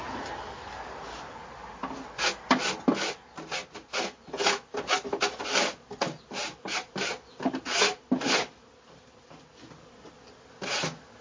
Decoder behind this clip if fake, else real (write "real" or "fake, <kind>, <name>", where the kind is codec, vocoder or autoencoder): real